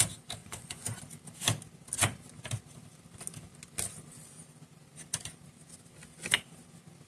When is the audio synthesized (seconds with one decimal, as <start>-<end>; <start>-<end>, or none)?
0.4-1.0